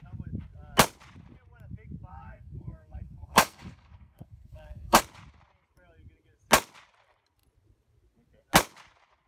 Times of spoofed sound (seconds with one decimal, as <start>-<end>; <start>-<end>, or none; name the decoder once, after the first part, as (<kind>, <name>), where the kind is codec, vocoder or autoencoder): 2.1-5.0 (codec, SNAC)